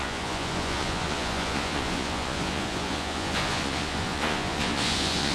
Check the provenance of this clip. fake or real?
fake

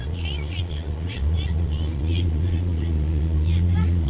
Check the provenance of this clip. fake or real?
fake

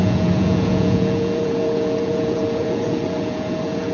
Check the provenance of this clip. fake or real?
fake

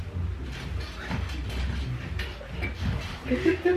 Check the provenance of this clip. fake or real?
real